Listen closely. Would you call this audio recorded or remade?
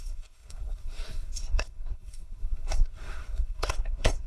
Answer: remade